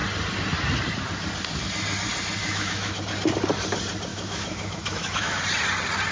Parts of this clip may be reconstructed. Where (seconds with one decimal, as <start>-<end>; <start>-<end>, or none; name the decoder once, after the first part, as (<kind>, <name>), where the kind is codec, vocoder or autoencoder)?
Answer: 2.4-3.0 (autoencoder, DAC-VAE); 4.1-5.4